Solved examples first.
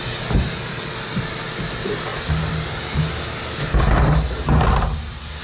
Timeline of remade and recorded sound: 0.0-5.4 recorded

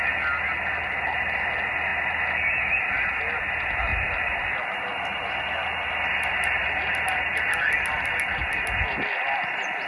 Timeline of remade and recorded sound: 0.0-9.9 recorded